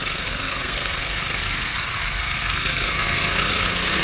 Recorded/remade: remade